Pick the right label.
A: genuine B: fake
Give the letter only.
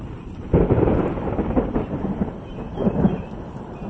B